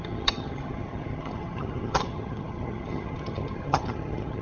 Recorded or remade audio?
remade